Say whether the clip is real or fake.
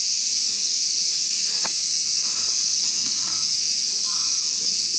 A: fake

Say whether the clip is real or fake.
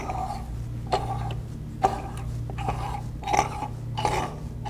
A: real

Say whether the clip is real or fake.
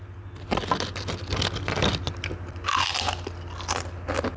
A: real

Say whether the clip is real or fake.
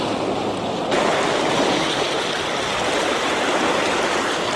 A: real